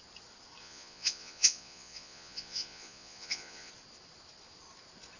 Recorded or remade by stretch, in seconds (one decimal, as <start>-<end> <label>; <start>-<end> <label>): 0.0-0.6 recorded; 0.6-3.7 remade; 3.7-5.2 recorded